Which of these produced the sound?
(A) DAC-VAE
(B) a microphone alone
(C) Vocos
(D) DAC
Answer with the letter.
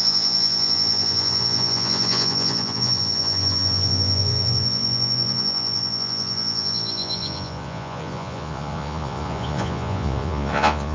C